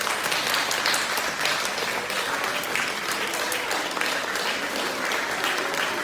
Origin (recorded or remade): recorded